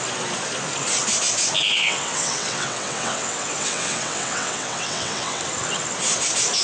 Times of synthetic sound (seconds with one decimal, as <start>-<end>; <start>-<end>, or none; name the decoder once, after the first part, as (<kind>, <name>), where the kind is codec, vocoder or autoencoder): 1.7-5.4 (vocoder, WaveNeXt)